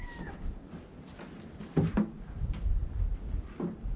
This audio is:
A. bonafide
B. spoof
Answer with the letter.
A